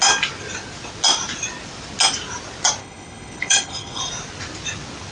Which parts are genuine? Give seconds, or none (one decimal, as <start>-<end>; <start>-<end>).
0.0-2.8; 4.0-5.1